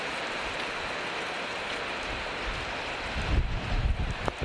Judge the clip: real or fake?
real